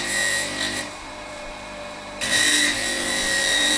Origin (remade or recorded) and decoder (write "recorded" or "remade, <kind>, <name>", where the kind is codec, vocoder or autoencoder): remade, vocoder, BigVGAN v2